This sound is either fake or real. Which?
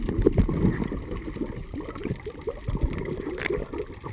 real